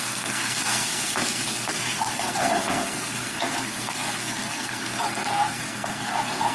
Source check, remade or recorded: remade